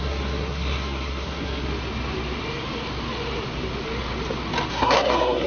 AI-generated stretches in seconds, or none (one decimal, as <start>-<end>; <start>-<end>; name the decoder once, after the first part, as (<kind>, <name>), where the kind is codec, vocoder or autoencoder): 0.0-1.7 (codec, SNAC); 4.7-5.5